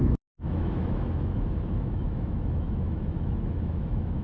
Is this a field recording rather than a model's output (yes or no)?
no